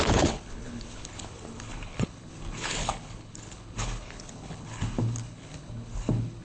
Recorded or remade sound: remade